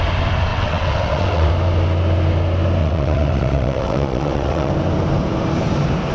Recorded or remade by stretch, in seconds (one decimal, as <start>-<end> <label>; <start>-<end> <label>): 0.0-0.5 recorded; 0.5-1.5 remade; 1.5-2.8 recorded; 2.8-4.7 remade; 4.7-6.1 recorded